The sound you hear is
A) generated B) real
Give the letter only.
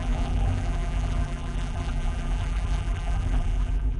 A